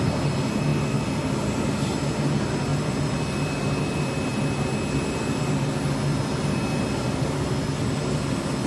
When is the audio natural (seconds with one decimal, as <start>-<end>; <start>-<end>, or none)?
0.0-8.7